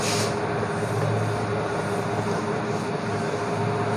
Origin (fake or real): real